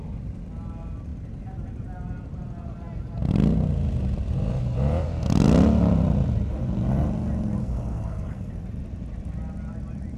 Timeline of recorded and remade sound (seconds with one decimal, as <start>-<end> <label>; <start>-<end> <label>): 0.0-7.6 recorded; 7.6-8.5 remade; 8.5-10.2 recorded